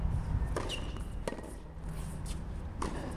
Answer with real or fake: real